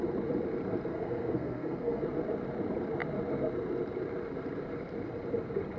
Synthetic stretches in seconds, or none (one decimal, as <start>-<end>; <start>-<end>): 0.9-2.0